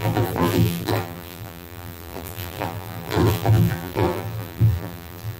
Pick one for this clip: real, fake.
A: fake